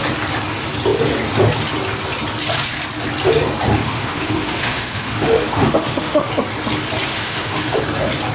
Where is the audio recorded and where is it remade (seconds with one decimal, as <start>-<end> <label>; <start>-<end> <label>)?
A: 0.0-3.8 recorded; 3.8-6.3 remade; 6.3-7.1 recorded; 7.1-7.8 remade; 7.8-8.3 recorded